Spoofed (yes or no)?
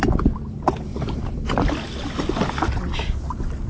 no